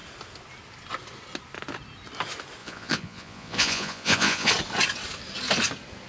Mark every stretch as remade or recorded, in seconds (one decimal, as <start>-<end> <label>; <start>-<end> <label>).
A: 0.0-2.6 recorded; 2.6-4.5 remade; 4.5-6.1 recorded